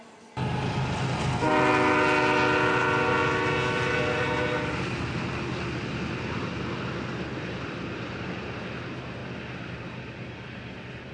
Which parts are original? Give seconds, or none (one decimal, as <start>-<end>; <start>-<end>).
0.0-11.1